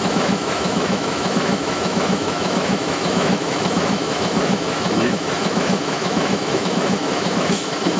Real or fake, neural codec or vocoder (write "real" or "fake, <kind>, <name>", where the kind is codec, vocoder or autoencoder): fake, autoencoder, DAC-VAE